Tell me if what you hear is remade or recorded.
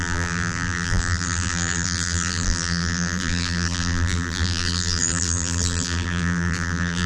remade